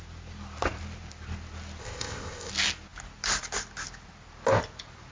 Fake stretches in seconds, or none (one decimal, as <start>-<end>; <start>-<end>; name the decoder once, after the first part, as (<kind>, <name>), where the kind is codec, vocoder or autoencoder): 1.8-2.5 (codec, ZipCodec)